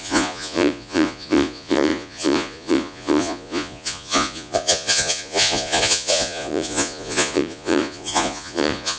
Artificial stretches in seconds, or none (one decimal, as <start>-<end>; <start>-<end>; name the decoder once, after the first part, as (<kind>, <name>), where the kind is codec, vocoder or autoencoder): 0.0-9.0 (vocoder, Vocos)

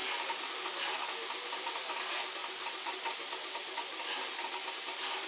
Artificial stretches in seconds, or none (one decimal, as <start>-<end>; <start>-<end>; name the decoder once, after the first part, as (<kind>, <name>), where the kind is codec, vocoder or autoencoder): none